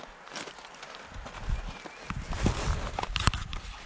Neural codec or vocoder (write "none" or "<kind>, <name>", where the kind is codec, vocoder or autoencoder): none